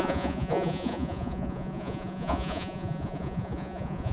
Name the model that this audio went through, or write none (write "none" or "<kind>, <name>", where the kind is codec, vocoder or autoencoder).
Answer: vocoder, Vocos